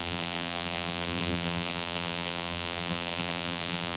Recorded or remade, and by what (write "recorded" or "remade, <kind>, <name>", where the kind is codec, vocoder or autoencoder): remade, vocoder, BigVGAN v2